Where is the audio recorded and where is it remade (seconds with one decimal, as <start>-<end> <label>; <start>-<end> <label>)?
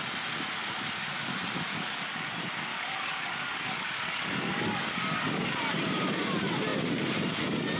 0.0-1.7 recorded; 1.7-2.3 remade; 2.3-2.7 recorded; 2.7-5.5 remade; 5.5-7.8 recorded